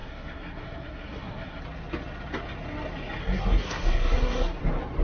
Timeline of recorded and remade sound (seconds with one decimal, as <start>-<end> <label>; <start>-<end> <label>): 0.0-1.6 remade; 1.6-3.2 recorded; 3.2-4.6 remade; 4.6-5.0 recorded